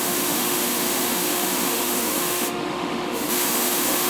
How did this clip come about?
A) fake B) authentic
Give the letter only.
A